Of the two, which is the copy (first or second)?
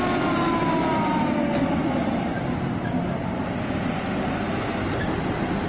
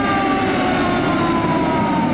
second